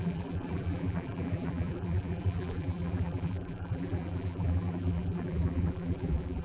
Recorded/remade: remade